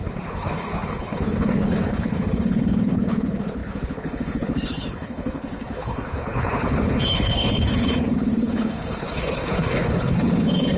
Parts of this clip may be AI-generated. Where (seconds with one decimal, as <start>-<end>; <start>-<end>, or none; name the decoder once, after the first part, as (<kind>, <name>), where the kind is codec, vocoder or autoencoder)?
0.0-10.8 (codec, HILCodec)